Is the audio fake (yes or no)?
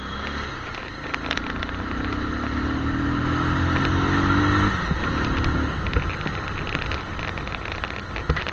no